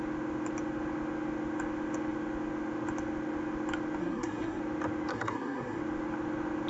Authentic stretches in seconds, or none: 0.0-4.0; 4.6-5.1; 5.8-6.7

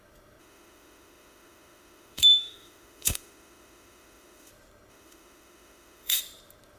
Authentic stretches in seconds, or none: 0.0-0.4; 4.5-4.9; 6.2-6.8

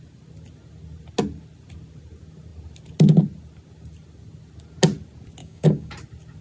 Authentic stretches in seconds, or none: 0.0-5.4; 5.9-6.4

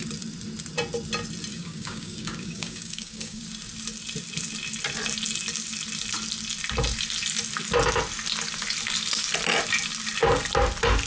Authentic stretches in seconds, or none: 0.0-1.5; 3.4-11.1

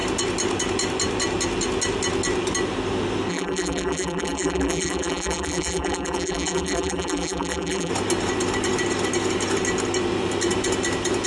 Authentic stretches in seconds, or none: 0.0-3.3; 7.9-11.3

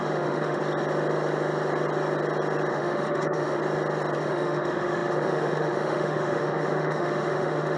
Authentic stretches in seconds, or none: 0.6-2.7; 3.6-4.2

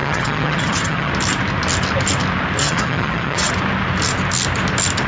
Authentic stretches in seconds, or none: 1.1-2.6; 3.5-5.1